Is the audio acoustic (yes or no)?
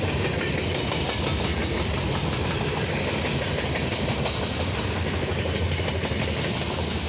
yes